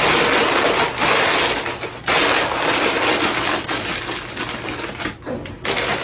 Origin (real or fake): real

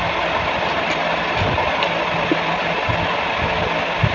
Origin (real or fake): real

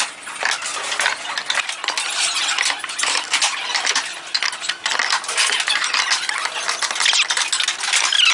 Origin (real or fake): real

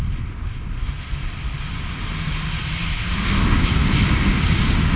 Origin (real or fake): real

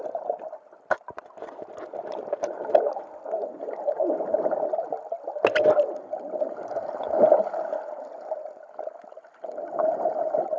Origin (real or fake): real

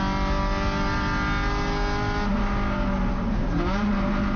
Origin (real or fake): real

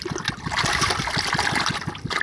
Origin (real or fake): real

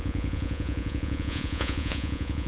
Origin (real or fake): fake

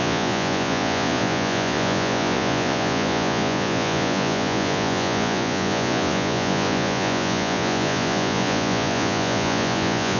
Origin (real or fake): fake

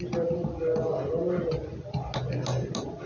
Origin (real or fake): real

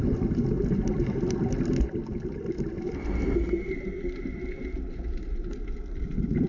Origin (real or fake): real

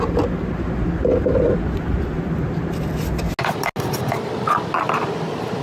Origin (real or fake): real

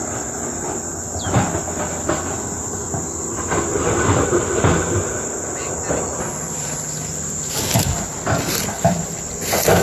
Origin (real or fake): real